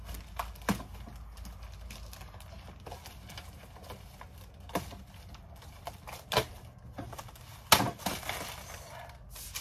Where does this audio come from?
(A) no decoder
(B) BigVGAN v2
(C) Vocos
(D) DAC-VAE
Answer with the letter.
A